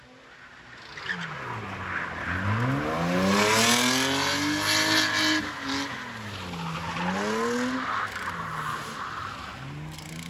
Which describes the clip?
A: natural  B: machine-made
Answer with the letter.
A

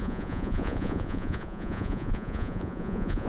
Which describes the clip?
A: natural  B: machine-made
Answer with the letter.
B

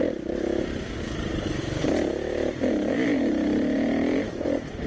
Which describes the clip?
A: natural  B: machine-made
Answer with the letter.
B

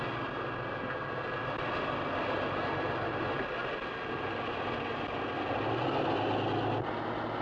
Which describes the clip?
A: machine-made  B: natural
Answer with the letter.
B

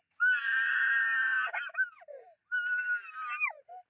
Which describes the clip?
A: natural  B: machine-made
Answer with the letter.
A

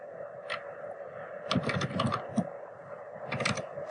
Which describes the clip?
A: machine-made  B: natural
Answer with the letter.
B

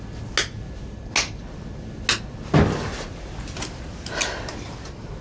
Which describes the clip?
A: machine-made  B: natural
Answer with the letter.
B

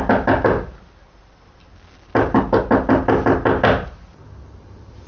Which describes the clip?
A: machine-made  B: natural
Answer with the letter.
B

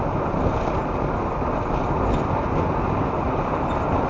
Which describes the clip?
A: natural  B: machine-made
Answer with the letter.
A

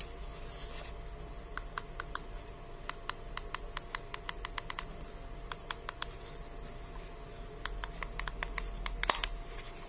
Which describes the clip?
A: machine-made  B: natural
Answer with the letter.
B